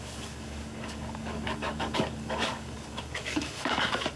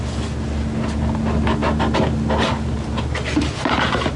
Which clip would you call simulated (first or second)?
first